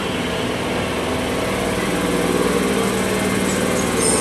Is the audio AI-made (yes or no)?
no